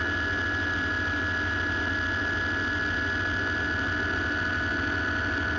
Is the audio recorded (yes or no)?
yes